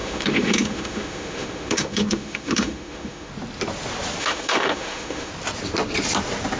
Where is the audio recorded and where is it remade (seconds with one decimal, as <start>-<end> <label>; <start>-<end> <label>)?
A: 0.0-3.3 remade; 3.3-4.2 recorded; 4.2-5.3 remade; 5.3-6.6 recorded